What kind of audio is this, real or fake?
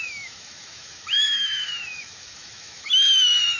fake